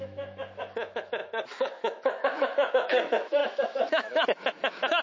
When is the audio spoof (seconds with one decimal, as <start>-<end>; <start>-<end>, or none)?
0.0-5.0